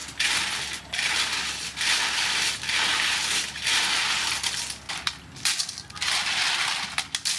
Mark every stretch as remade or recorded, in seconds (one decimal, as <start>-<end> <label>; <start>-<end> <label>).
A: 0.0-7.4 recorded